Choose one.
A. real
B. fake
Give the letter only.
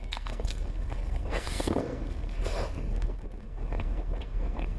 B